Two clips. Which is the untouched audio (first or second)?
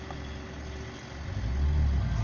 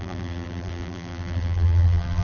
first